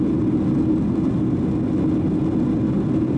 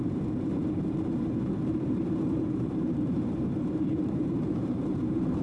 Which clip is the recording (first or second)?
first